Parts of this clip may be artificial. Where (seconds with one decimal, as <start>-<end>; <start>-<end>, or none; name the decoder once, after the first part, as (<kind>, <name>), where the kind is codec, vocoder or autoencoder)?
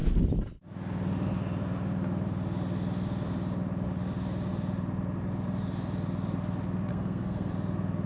6.9-7.5 (codec, SNAC)